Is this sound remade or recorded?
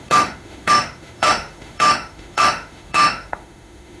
remade